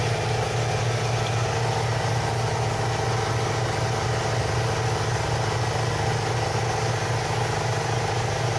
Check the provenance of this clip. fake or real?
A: real